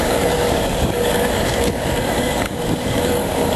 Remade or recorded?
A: remade